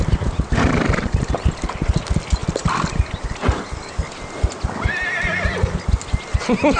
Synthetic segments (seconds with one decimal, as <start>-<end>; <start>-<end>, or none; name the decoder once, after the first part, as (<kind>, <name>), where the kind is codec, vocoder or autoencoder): none